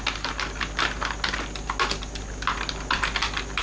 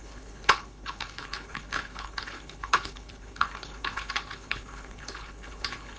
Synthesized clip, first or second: second